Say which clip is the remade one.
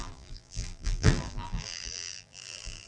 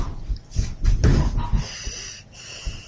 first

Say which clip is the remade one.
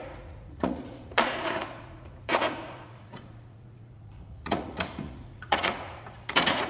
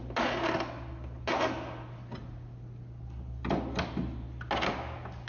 first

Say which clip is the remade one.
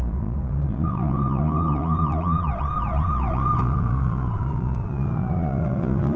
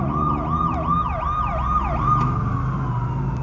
first